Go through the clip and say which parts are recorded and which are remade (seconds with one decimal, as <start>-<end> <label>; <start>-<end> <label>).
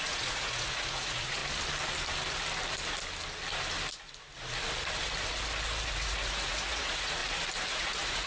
0.0-1.4 remade; 1.4-5.9 recorded; 5.9-7.2 remade; 7.2-7.7 recorded; 7.7-8.3 remade